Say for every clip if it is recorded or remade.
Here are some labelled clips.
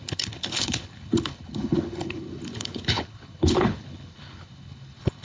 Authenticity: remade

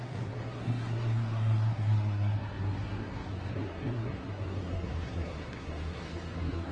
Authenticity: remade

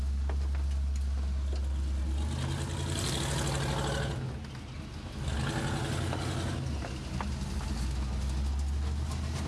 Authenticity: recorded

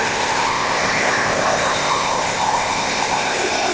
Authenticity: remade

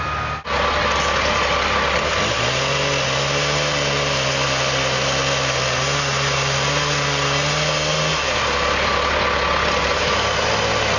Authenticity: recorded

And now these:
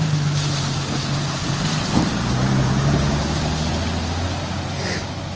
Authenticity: recorded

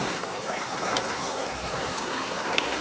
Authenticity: remade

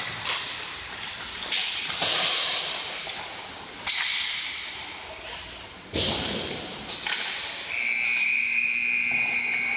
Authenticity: recorded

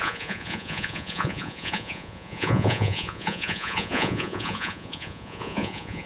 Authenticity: remade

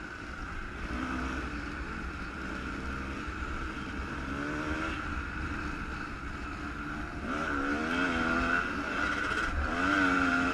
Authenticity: recorded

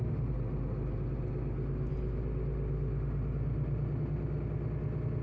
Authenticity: recorded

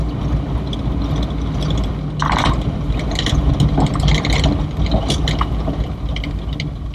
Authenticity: recorded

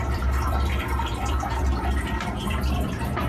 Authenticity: remade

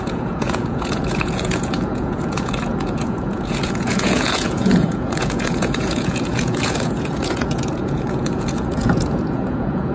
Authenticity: remade